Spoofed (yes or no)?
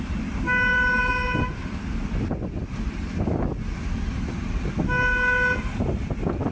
no